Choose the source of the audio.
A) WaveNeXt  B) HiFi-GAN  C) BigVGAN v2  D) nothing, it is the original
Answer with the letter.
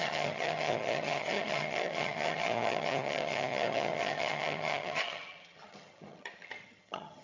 B